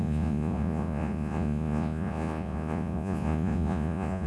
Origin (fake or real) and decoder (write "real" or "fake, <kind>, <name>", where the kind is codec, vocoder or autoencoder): fake, vocoder, Vocos